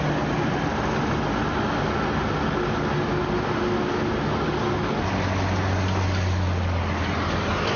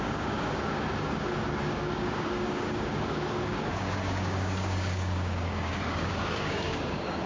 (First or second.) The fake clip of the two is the second